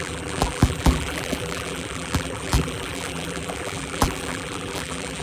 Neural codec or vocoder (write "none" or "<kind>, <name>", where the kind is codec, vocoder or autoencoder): vocoder, BigVGAN v2